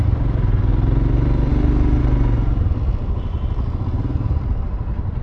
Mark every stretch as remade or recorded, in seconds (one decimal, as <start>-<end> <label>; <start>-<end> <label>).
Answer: 0.0-3.9 recorded; 3.9-4.7 remade; 4.7-5.2 recorded